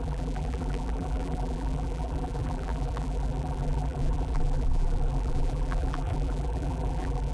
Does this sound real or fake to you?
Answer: fake